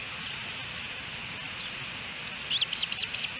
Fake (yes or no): no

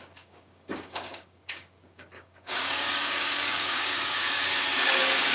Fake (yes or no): yes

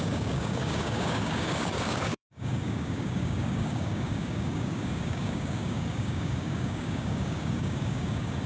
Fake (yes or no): yes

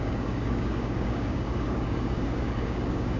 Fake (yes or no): yes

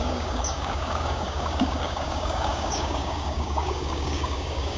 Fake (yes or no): yes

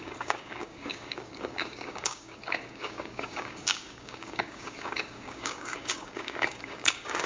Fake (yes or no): yes